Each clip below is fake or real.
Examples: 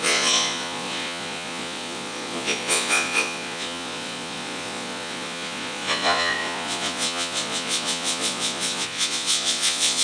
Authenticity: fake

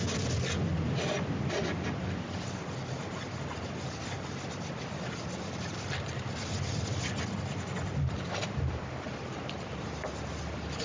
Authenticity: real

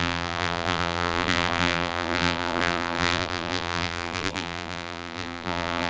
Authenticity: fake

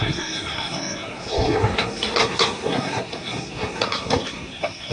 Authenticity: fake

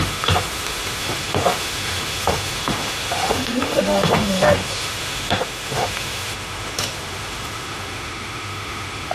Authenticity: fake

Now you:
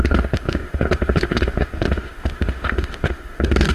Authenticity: fake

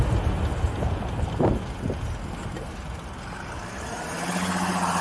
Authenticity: real